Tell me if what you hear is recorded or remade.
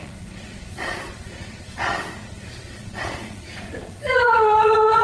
remade